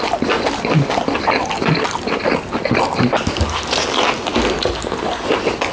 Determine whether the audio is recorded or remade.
remade